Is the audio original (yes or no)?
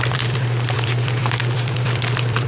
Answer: no